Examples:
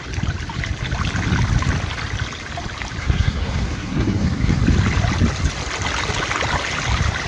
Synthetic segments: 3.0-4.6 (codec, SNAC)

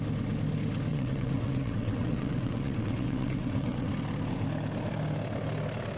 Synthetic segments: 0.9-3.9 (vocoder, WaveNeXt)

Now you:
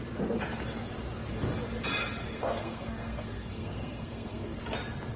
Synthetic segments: 2.3-4.6 (codec, SNAC)

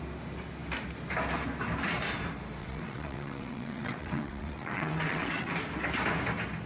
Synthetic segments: 2.6-5.5 (vocoder, WaveNeXt)

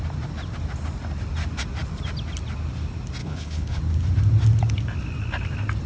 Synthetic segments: 3.2-3.8 (codec, HILCodec)

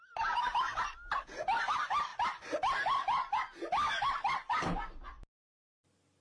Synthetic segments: none